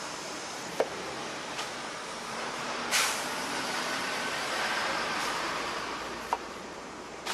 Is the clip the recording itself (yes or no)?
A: no